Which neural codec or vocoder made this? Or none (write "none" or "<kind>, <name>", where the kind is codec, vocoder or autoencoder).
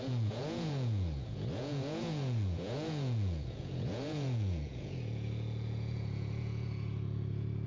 vocoder, Vocos